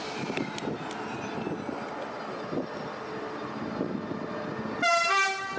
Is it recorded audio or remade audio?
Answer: recorded